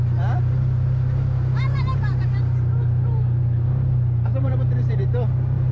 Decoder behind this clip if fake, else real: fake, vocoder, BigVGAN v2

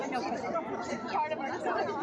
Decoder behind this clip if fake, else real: real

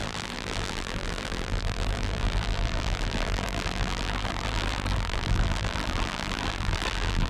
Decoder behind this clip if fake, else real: fake, vocoder, BigVGAN v2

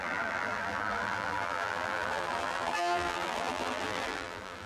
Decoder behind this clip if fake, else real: fake, vocoder, BigVGAN v2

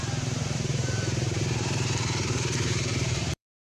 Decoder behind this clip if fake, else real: fake, vocoder, BigVGAN v2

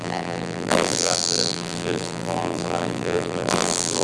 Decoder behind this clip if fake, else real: fake, vocoder, BigVGAN v2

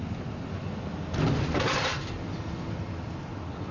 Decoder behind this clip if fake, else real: real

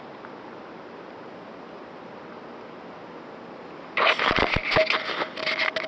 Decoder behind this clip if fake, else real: real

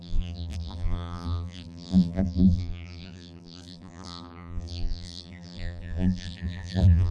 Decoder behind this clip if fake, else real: fake, vocoder, BigVGAN v2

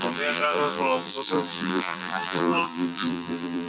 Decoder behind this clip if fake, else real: fake, vocoder, BigVGAN v2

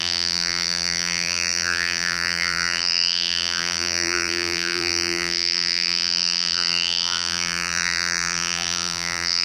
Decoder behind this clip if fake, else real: fake, vocoder, BigVGAN v2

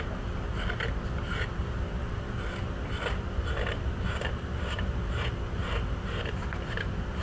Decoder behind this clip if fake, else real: real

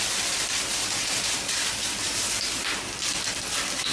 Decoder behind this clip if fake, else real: fake, vocoder, BigVGAN v2